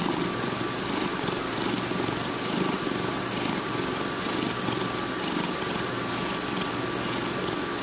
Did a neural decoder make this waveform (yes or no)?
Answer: no